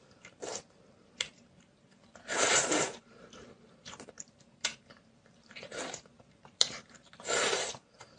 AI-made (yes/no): yes